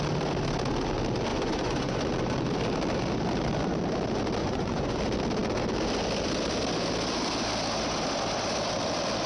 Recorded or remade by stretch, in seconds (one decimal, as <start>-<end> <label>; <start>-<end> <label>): 0.0-1.3 recorded; 1.3-2.0 remade; 2.0-4.4 recorded; 4.4-5.0 remade; 5.0-9.3 recorded